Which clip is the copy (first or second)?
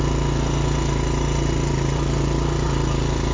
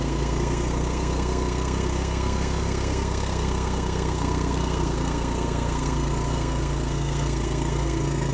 second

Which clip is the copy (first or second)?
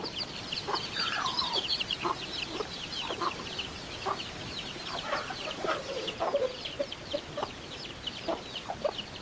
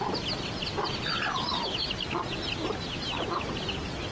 first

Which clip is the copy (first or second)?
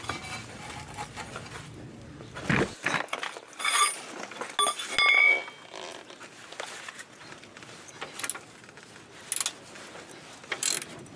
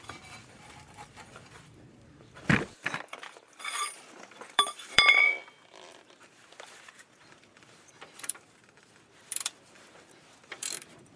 second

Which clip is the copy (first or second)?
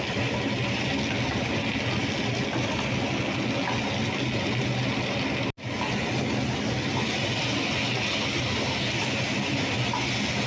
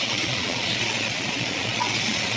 second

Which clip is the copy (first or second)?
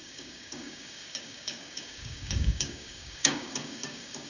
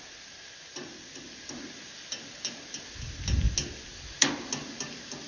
first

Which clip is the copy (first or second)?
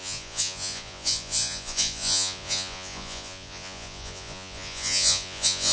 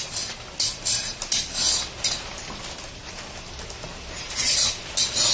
first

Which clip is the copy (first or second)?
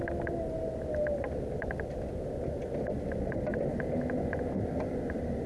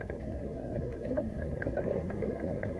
second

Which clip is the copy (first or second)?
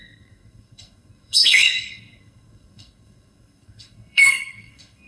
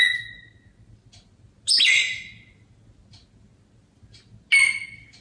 first